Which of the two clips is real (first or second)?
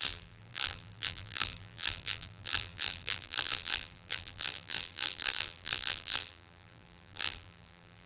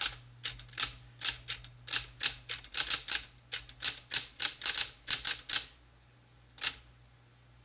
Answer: second